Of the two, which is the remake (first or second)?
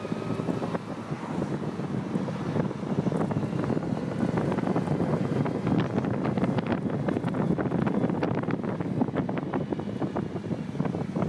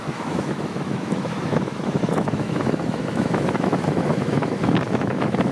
second